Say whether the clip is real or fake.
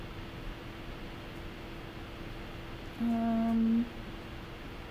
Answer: real